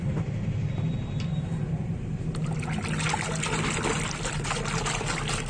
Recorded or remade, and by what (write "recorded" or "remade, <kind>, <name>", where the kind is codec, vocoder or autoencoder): recorded